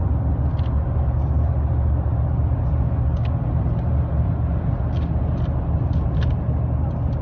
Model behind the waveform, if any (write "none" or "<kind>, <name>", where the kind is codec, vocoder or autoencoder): none